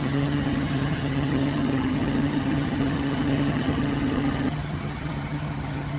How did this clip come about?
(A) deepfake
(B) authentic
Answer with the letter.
A